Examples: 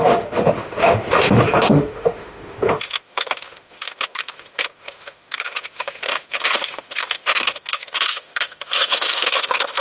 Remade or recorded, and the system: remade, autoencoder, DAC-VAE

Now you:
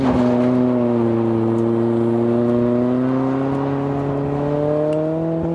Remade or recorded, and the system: recorded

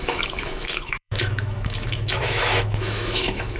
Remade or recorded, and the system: remade, autoencoder, DAC-VAE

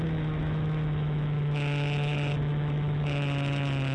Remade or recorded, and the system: remade, autoencoder, DAC-VAE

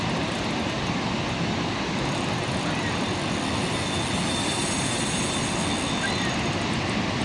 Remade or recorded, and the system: recorded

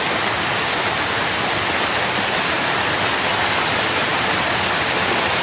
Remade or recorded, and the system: recorded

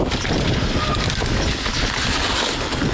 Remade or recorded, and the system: recorded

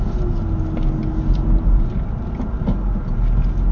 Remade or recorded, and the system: recorded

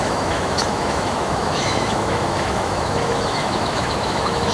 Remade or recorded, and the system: remade, autoencoder, DAC-VAE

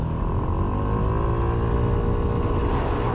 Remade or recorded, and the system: recorded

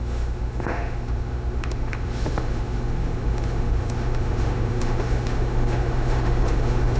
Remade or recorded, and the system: remade, autoencoder, DAC-VAE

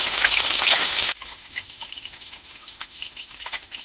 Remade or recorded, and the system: remade, autoencoder, DAC-VAE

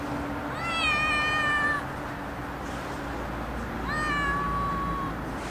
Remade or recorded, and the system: recorded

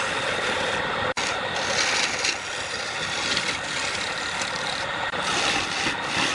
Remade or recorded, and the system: recorded